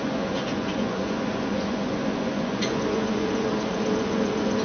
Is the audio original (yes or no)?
no